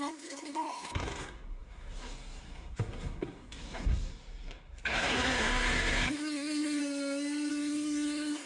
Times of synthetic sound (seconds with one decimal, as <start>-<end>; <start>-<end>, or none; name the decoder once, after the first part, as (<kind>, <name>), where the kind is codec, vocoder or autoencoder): 0.0-6.8 (codec, SNAC); 7.5-8.5